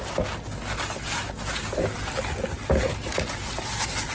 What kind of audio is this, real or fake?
real